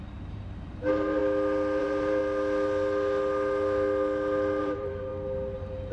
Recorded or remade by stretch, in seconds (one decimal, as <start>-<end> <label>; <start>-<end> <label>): 0.0-1.2 remade; 1.2-1.8 recorded; 1.8-2.2 remade; 2.2-4.6 recorded; 4.6-5.1 remade; 5.1-5.9 recorded